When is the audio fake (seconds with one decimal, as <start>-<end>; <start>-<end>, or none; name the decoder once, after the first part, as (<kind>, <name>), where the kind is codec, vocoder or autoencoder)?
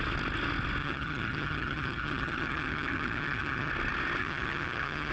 0.8-3.7 (vocoder, HiFi-GAN); 4.2-5.1